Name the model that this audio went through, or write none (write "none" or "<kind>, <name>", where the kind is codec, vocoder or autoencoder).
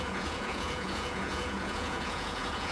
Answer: vocoder, Vocos